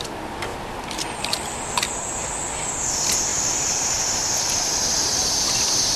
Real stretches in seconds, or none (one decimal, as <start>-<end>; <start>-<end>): 0.0-3.3; 4.7-6.0